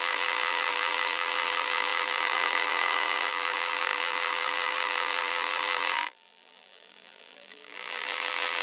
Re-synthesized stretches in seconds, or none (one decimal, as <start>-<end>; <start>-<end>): 0.0-8.6